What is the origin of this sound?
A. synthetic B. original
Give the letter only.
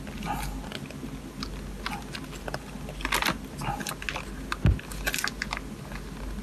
B